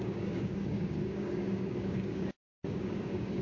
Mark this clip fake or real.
fake